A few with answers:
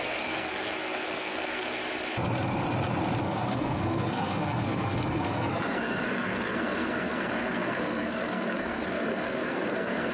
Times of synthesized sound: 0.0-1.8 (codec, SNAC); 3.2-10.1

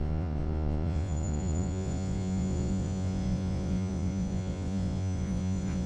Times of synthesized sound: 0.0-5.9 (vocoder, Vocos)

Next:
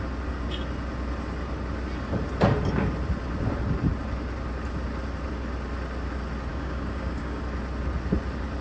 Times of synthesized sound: 6.5-7.4 (codec, DAC)